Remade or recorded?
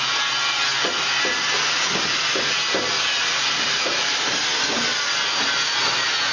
recorded